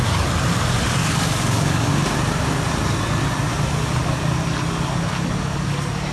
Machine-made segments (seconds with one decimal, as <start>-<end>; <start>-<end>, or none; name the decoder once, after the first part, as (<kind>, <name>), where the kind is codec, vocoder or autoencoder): 1.0-1.9 (codec, DAC)